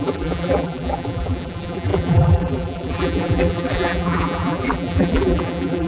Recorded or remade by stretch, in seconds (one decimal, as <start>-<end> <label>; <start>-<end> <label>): 0.0-5.9 remade